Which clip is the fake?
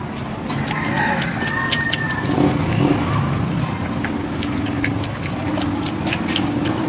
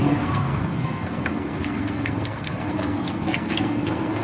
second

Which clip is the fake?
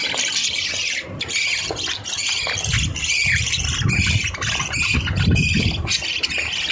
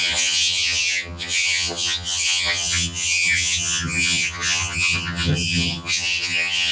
second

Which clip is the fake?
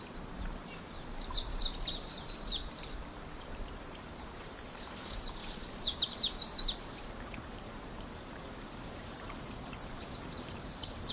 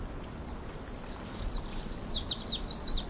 first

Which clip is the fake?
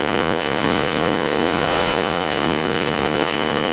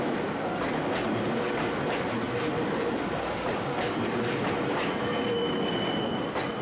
first